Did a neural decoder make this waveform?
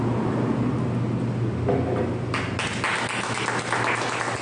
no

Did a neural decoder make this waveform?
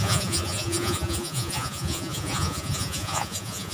yes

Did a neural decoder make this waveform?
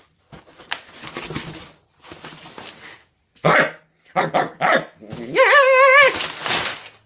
no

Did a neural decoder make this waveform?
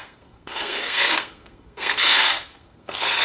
yes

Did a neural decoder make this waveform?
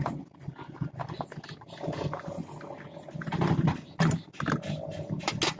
no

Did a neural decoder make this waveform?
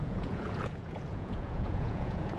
yes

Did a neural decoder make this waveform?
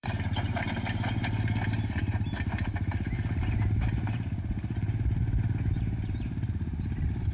yes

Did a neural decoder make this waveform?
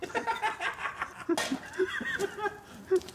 no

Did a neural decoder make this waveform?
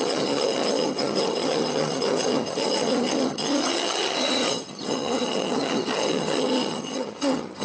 yes